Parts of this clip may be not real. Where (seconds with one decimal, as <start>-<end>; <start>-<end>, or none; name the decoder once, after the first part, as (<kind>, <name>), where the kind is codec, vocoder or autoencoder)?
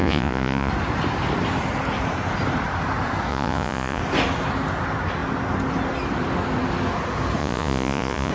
0.0-0.7 (vocoder, Vocos); 3.3-4.0; 7.4-8.3